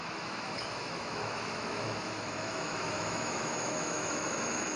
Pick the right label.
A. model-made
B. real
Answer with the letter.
A